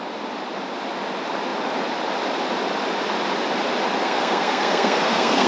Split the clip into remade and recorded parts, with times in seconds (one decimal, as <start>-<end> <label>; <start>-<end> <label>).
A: 0.0-4.0 recorded; 4.0-5.5 remade